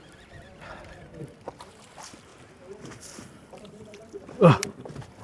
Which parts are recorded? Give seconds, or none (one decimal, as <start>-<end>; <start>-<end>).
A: 2.3-3.0